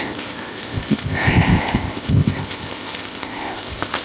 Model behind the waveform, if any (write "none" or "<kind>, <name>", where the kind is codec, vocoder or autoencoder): codec, ZipCodec